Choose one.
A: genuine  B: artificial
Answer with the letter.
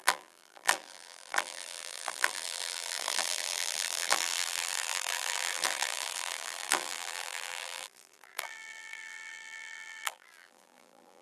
B